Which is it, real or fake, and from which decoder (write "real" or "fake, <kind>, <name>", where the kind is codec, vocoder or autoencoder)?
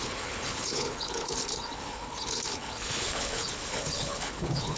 fake, codec, HILCodec